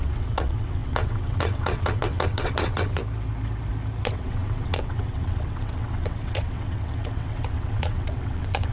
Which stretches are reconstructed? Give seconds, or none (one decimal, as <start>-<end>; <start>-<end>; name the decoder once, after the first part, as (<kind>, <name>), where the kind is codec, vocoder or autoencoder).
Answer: 0.0-3.0 (vocoder, WaveNeXt); 4.0-8.7